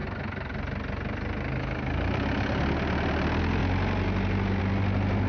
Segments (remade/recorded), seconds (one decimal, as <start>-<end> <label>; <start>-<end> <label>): 0.0-5.3 recorded